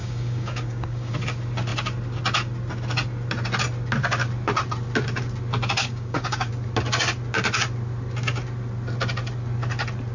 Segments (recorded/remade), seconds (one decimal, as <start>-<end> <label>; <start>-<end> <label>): 0.0-1.1 remade; 1.1-5.8 recorded; 5.8-6.5 remade; 6.5-10.1 recorded